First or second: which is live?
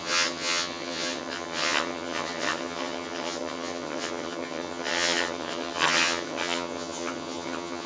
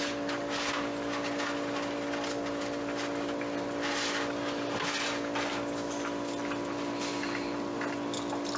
second